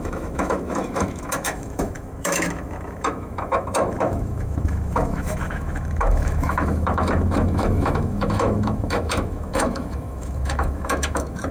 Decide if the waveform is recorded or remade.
remade